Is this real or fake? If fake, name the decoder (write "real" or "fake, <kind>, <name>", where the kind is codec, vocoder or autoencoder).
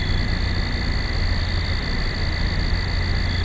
real